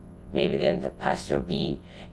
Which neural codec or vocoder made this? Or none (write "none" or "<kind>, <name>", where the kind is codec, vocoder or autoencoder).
vocoder, WaveNeXt